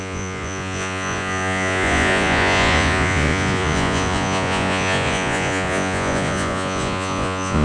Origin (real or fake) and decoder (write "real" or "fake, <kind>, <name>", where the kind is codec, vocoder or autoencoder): fake, vocoder, Vocos